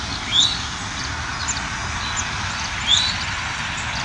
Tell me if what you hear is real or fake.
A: real